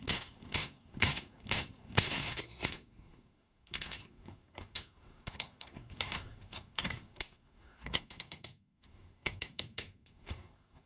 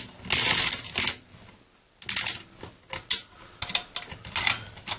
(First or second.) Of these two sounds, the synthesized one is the first